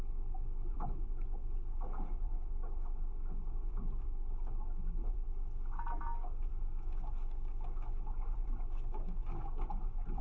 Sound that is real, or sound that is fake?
real